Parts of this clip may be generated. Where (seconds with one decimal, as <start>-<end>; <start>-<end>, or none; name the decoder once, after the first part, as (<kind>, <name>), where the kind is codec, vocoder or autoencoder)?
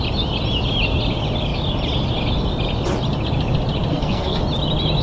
3.9-4.4 (codec, SNAC)